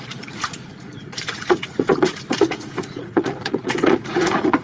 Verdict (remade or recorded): remade